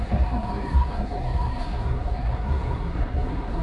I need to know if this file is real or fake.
fake